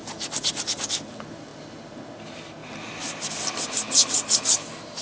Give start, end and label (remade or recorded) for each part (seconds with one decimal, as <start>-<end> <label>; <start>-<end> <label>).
0.0-5.0 recorded